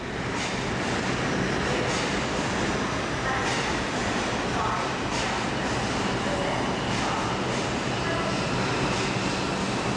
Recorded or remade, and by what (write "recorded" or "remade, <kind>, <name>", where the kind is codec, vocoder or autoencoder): recorded